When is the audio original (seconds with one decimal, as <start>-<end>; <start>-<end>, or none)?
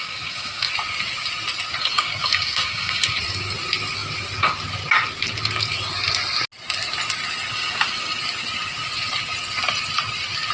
0.7-1.8; 3.2-7.5; 8.2-10.5